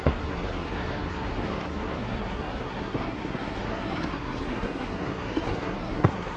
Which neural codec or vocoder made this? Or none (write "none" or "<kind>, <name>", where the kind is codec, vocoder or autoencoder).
codec, SNAC